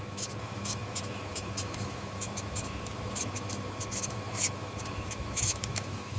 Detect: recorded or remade remade